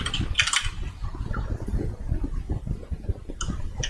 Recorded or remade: recorded